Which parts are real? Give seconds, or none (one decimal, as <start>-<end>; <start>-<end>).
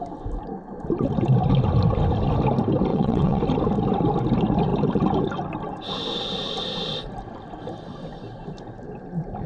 0.0-2.9; 3.4-9.5